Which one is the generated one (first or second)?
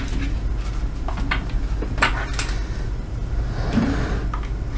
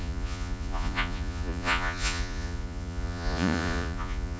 second